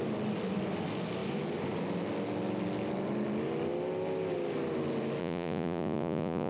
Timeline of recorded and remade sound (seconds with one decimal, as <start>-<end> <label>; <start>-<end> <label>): 0.0-5.2 recorded; 5.2-6.5 remade